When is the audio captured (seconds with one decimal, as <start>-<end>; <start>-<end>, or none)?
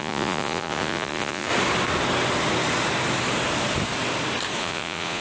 1.5-4.6